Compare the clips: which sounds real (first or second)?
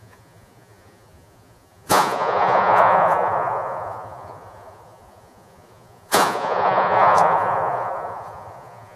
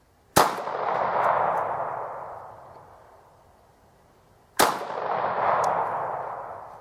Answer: second